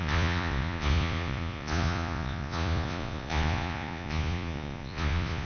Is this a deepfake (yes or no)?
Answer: yes